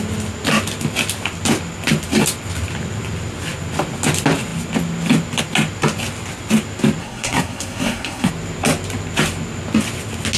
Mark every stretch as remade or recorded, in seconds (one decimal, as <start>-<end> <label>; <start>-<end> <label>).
0.0-7.0 recorded; 7.0-8.3 remade; 8.3-10.4 recorded